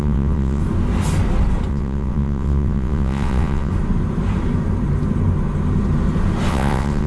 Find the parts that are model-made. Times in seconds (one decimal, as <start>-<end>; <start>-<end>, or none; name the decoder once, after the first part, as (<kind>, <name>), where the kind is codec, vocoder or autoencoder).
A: 0.0-0.6 (vocoder, WaveNeXt); 1.7-3.7; 6.5-7.1